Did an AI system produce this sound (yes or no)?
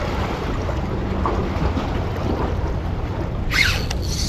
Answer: no